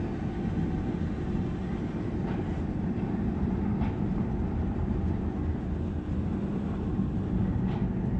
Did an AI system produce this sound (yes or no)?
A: no